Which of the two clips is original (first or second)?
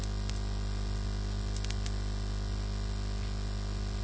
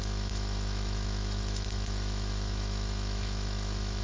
first